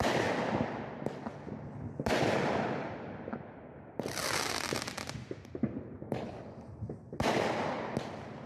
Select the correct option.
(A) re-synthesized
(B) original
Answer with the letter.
B